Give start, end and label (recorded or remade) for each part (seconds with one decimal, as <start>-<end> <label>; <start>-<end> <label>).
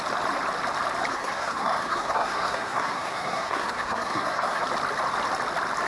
0.0-1.1 recorded; 1.1-4.6 remade; 4.6-5.9 recorded